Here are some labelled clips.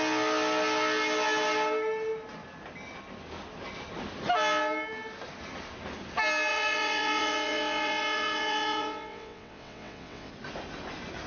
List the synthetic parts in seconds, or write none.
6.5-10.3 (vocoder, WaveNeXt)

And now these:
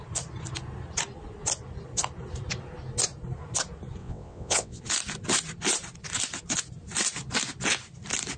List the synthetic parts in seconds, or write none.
4.0-4.8 (vocoder, WaveNeXt)

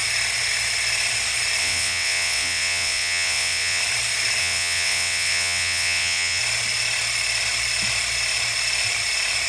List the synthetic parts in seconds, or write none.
1.6-3.8 (vocoder, WaveNeXt); 4.4-6.4

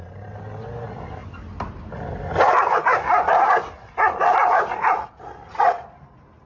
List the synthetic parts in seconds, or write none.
none

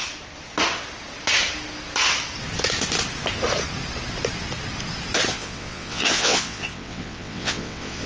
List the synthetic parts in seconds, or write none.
5.3-8.1 (vocoder, WaveNeXt)

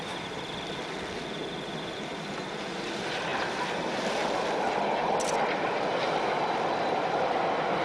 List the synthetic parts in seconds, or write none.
none